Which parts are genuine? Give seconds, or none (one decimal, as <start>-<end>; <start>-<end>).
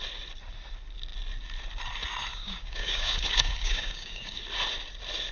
0.0-2.3; 4.4-5.3